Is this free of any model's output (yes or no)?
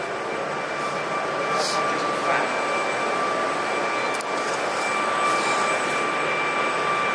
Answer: yes